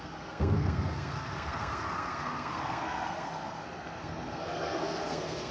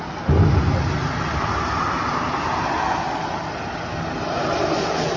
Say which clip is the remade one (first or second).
first